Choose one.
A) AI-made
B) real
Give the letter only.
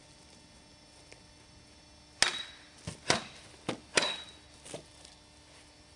B